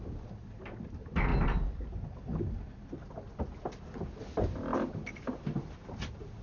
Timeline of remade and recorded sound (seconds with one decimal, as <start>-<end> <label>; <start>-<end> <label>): 0.0-6.4 recorded